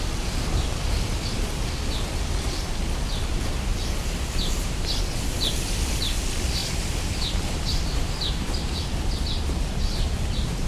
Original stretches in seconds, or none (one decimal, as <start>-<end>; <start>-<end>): 3.7-4.6

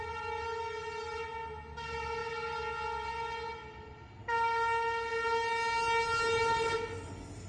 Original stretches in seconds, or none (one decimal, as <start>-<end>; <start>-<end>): 0.0-7.5

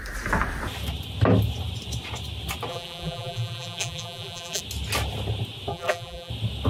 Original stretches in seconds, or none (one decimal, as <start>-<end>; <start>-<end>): 0.0-2.7; 4.6-5.7; 6.3-6.7

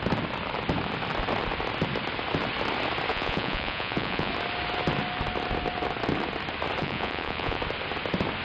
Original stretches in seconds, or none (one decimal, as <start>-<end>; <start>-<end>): 0.0-3.1; 4.3-6.8; 7.6-8.4

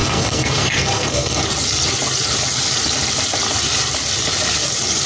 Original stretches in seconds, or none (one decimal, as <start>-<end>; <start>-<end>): 1.4-5.1

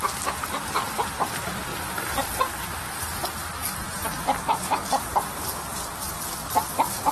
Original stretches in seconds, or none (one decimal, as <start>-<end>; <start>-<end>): 0.0-3.9; 5.7-7.1

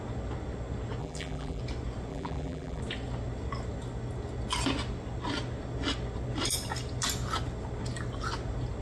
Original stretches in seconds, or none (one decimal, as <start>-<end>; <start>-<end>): 0.0-1.0; 1.6-2.1; 2.8-8.8

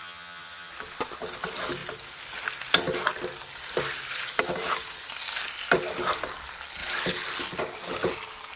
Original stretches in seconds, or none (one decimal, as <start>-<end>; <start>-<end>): 0.7-8.6